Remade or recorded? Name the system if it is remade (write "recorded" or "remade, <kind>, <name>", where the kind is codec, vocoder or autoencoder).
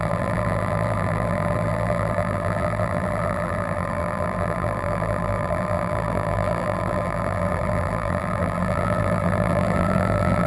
remade, vocoder, BigVGAN v2